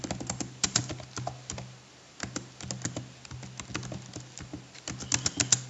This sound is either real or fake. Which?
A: real